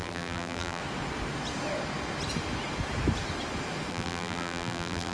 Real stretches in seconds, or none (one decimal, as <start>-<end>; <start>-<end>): 0.8-3.9